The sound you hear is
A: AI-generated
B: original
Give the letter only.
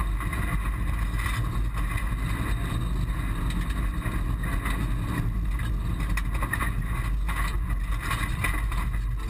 B